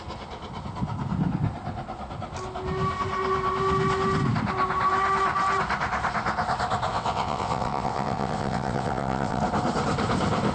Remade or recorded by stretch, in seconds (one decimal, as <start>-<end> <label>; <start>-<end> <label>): 0.0-6.9 recorded; 6.9-9.4 remade; 9.4-10.5 recorded